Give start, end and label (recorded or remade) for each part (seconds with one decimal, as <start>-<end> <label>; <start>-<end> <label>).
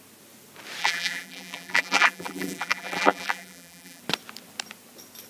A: 0.0-0.8 recorded; 0.8-4.0 remade; 4.0-5.3 recorded